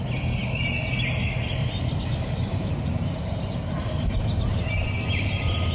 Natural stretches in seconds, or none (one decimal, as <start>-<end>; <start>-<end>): 0.0-1.6; 4.7-5.7